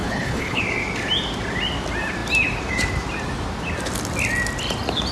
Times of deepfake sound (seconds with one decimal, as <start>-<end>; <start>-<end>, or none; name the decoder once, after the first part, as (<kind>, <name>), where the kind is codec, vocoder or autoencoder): 0.0-0.6 (codec, HILCodec)